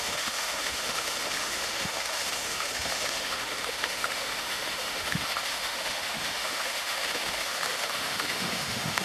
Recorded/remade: remade